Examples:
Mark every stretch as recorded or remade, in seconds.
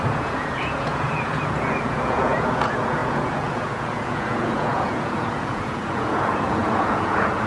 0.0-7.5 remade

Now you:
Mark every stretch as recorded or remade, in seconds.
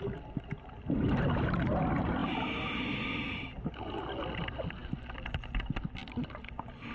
0.0-6.9 recorded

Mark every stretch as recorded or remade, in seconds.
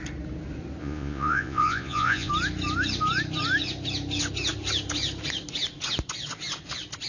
0.0-0.8 recorded; 0.8-2.3 remade; 2.3-7.1 recorded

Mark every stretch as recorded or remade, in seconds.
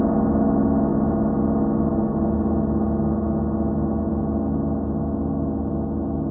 0.0-6.3 recorded